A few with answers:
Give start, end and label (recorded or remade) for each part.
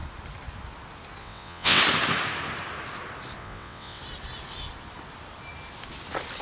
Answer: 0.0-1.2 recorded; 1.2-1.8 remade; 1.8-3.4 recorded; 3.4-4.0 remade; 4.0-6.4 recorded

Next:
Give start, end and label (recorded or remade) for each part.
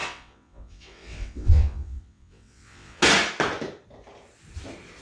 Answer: 0.0-3.0 remade; 3.0-5.0 recorded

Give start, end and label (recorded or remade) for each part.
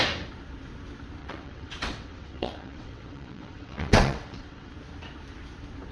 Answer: 0.0-1.2 recorded; 1.2-4.7 remade; 4.7-5.9 recorded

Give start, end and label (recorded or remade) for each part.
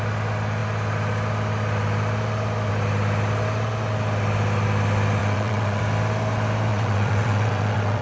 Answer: 0.0-5.2 recorded; 5.2-5.8 remade; 5.8-6.7 recorded; 6.7-8.0 remade